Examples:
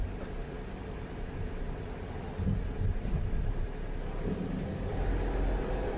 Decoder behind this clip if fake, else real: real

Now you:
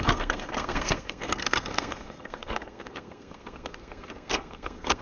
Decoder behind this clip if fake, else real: fake, codec, SNAC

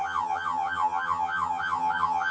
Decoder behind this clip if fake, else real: fake, vocoder, HiFi-GAN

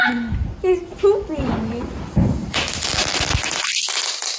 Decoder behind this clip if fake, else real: real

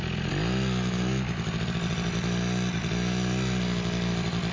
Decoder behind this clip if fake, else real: real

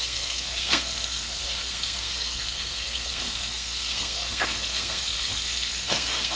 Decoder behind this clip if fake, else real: fake, codec, SNAC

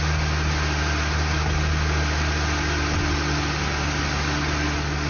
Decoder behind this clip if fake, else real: real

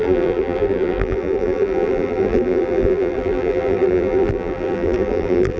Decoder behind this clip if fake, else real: fake, vocoder, BigVGAN v2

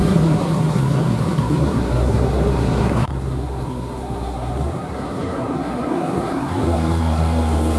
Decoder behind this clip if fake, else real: fake, codec, SNAC